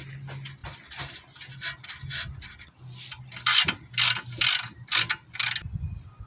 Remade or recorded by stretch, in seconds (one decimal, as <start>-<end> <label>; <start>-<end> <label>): 0.0-6.3 recorded